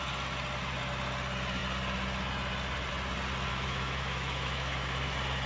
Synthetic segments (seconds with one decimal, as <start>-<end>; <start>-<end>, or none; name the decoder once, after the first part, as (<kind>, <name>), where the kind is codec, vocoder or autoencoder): 3.5-5.1 (autoencoder, DAC-VAE)